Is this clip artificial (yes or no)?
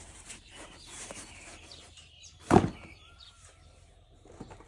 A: yes